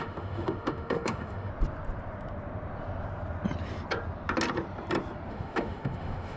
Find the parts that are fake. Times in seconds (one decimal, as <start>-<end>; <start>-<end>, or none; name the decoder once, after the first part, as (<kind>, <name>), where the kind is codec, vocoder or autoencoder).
0.0-1.5 (autoencoder, DAC-VAE); 5.3-6.4